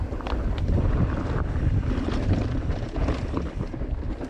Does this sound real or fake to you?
fake